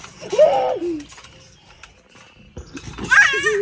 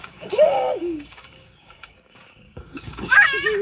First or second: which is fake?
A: second